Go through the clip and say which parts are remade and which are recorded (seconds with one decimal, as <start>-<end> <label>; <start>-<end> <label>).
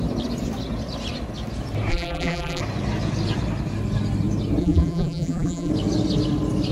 0.0-1.9 recorded; 1.9-2.6 remade; 2.6-4.6 recorded; 4.6-5.7 remade; 5.7-6.7 recorded